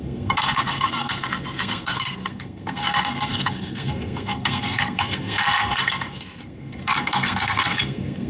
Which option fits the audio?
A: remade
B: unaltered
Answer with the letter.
A